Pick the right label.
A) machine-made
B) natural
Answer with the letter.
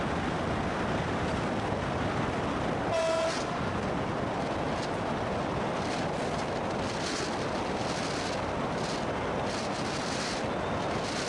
B